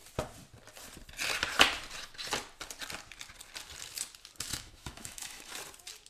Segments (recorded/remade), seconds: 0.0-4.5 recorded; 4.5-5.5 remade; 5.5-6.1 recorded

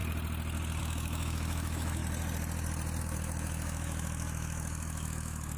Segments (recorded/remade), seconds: 0.0-0.8 recorded; 0.8-2.0 remade; 2.0-3.0 recorded; 3.0-5.6 remade

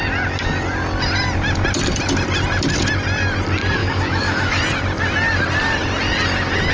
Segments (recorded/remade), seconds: 0.0-3.8 recorded; 3.8-4.6 remade; 4.6-6.7 recorded

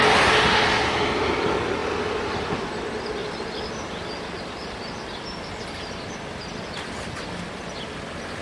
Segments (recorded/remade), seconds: 0.0-8.4 recorded

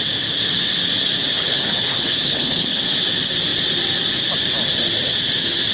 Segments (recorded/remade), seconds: 0.0-1.3 recorded; 1.3-2.8 remade; 2.8-5.7 recorded

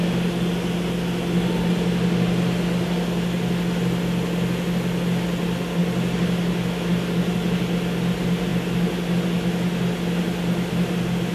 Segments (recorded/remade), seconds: 0.0-11.3 recorded

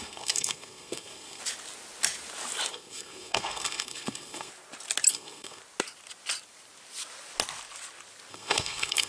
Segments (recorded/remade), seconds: 0.0-1.4 remade; 1.4-2.7 recorded; 2.7-4.5 remade; 4.5-5.1 recorded; 5.1-5.6 remade; 5.6-8.3 recorded; 8.3-9.1 remade

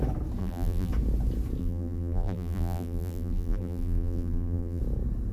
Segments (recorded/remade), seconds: 0.0-0.4 recorded; 0.4-0.9 remade; 0.9-1.6 recorded; 1.6-4.8 remade; 4.8-5.3 recorded